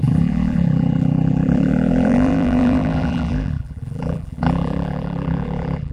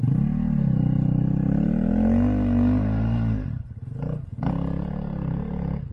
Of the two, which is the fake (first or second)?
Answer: first